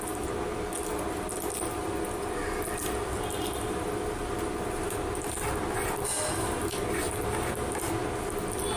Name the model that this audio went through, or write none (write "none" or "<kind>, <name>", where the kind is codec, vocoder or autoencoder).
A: none